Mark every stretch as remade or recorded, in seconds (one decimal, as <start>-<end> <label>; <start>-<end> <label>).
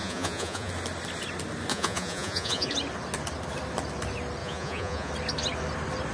0.0-0.7 remade; 0.7-1.7 recorded; 1.7-2.7 remade; 2.7-4.4 recorded; 4.4-5.1 remade; 5.1-6.1 recorded